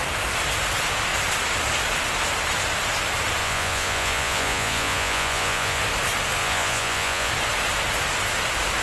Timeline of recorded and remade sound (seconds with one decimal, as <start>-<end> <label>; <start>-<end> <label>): 0.0-3.4 recorded; 3.4-5.8 remade; 5.8-6.4 recorded; 6.4-7.3 remade; 7.3-8.8 recorded